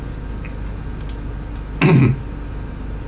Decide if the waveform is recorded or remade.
recorded